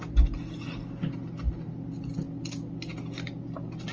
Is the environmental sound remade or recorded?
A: recorded